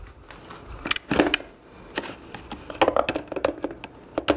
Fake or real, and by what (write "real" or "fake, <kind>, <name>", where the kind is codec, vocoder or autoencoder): real